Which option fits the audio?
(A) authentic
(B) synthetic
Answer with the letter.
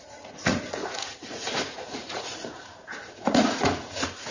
B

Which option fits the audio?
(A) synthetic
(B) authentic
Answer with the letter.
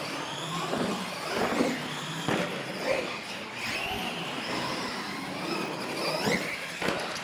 B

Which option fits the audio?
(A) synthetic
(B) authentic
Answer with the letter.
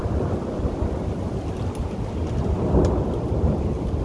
B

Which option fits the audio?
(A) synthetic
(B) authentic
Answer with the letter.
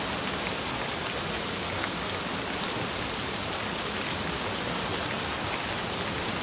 B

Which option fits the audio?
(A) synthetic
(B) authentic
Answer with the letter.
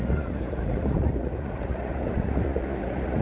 A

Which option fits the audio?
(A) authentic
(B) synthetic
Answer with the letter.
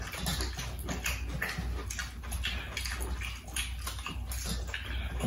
A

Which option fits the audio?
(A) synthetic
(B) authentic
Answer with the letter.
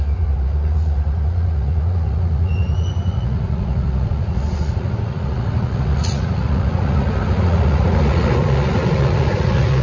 A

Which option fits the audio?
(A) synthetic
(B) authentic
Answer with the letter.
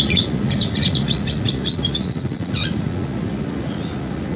A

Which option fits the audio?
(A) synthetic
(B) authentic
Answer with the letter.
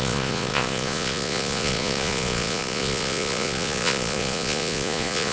A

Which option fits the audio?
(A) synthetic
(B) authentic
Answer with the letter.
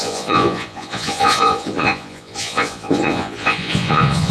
A